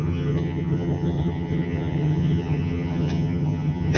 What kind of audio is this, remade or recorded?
remade